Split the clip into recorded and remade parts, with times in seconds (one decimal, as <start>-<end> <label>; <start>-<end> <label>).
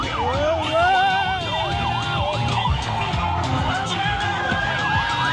0.0-2.5 recorded; 2.5-4.7 remade; 4.7-5.3 recorded